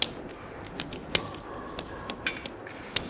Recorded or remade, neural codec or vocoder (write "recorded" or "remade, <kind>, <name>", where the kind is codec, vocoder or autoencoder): recorded